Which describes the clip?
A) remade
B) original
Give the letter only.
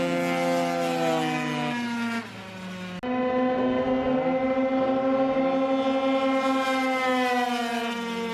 B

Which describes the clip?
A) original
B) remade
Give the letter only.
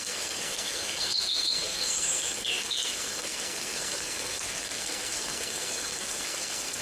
B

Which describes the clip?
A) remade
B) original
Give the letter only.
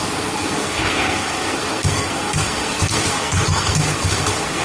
A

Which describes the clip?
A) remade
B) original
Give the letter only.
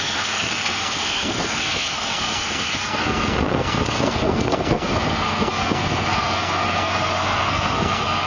A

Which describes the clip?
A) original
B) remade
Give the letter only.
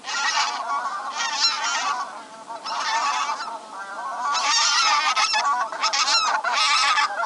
A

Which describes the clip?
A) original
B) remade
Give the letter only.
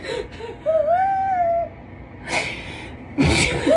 A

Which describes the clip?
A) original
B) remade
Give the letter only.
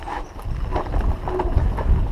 A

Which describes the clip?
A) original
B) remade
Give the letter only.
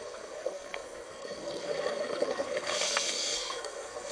B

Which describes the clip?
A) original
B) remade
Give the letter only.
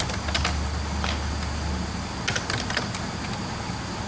A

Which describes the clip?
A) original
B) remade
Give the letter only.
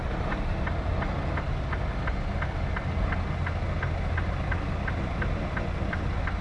A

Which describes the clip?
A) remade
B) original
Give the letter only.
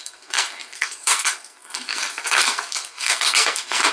A